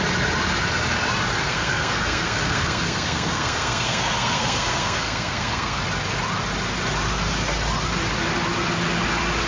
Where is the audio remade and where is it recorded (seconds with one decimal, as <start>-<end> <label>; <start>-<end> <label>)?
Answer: 0.0-1.4 recorded; 1.4-5.8 remade; 5.8-9.5 recorded